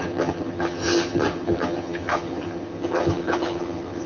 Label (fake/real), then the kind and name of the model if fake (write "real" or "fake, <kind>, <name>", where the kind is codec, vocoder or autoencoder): fake, vocoder, HiFi-GAN